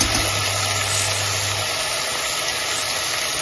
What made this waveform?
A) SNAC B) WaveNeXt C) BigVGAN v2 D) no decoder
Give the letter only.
D